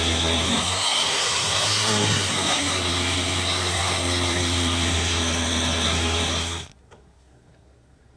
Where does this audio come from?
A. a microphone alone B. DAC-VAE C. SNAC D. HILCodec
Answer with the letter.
C